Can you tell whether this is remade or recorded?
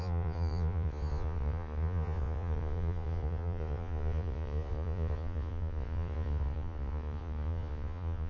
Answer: remade